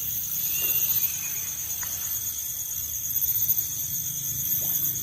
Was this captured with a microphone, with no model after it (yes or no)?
yes